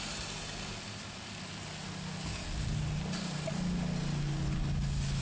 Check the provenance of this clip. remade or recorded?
recorded